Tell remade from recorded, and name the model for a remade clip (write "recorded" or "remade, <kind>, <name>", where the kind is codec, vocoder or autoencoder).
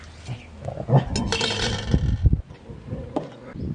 recorded